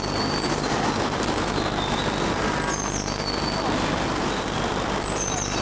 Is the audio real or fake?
real